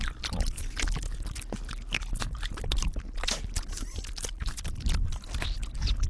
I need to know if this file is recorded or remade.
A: recorded